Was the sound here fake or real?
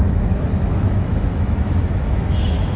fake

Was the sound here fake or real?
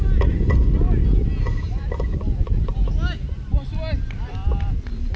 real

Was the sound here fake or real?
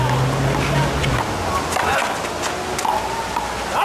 real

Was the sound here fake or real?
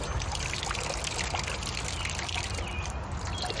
real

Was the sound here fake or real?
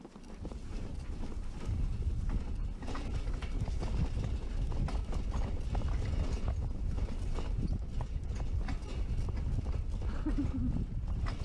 real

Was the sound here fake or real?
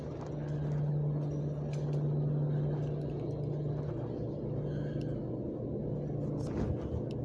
real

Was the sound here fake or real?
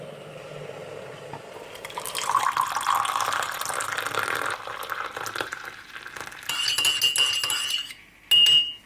real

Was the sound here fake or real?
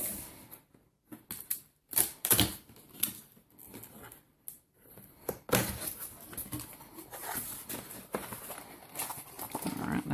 real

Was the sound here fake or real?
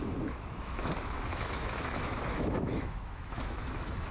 fake